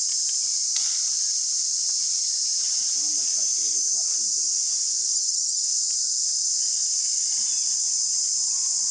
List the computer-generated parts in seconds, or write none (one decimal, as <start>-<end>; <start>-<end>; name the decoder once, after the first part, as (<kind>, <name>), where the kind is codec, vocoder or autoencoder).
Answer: 5.1-5.6 (vocoder, HiFi-GAN)